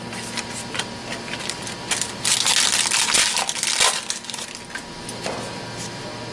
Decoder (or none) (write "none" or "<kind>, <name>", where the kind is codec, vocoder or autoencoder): none